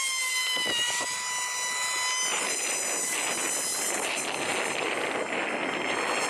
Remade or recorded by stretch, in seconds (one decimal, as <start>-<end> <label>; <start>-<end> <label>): 0.0-6.3 recorded